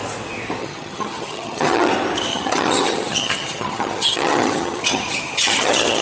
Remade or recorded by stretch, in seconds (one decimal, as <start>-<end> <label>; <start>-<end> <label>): 0.0-0.6 recorded; 0.6-1.9 remade; 1.9-2.3 recorded; 2.3-6.0 remade